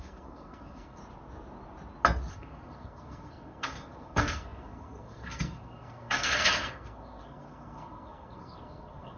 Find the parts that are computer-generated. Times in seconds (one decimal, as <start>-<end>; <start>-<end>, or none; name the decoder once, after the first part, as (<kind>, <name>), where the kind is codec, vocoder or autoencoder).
0.0-1.0 (codec, SNAC); 2.3-9.2